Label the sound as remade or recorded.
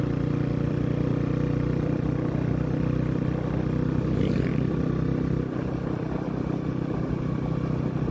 recorded